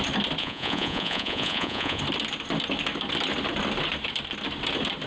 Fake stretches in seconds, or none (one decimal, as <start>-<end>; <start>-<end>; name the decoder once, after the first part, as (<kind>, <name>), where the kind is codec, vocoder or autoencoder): 0.4-2.0 (vocoder, Vocos)